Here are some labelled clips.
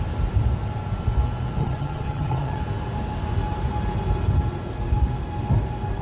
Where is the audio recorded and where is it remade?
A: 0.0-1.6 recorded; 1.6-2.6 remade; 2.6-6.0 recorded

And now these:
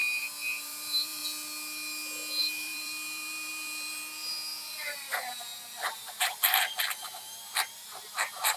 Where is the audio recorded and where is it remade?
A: 0.0-0.6 recorded; 0.6-1.2 remade; 1.2-2.4 recorded; 2.4-8.6 remade

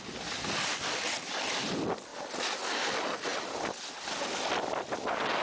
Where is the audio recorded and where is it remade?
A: 0.0-5.4 recorded

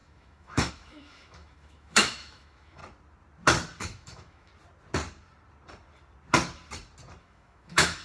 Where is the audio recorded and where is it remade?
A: 0.0-2.8 remade; 2.8-3.8 recorded; 3.8-4.5 remade; 4.5-7.2 recorded; 7.2-8.0 remade

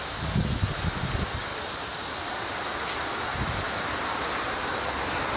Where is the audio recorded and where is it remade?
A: 0.0-1.5 recorded; 1.5-2.3 remade; 2.3-3.3 recorded; 3.3-4.3 remade; 4.3-5.4 recorded

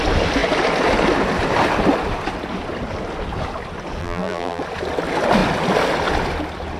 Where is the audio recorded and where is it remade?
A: 0.0-4.0 recorded; 4.0-4.6 remade; 4.6-6.8 recorded

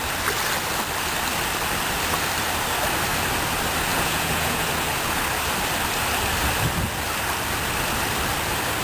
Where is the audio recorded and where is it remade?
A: 0.0-3.9 recorded; 3.9-4.7 remade; 4.7-8.8 recorded